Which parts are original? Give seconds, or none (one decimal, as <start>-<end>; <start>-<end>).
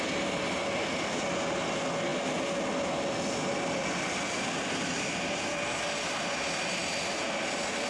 0.0-7.9